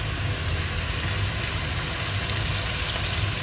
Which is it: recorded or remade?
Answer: recorded